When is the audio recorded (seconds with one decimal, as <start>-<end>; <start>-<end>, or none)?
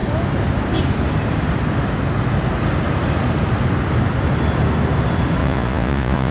0.0-5.4